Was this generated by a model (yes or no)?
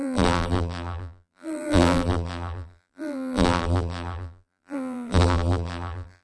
yes